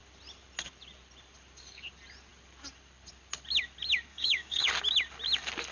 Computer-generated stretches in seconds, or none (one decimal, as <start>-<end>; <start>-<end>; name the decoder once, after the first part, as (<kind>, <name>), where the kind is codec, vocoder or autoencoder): 4.1-4.7 (codec, DAC)